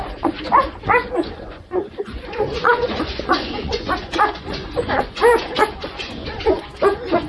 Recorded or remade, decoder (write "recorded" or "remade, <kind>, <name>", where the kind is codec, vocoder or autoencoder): remade, vocoder, Vocos